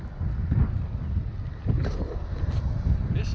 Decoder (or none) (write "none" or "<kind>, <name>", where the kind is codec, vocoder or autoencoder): none